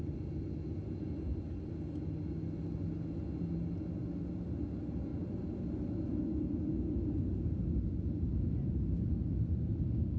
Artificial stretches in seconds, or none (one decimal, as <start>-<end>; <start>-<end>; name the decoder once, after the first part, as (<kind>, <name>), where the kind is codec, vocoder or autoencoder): none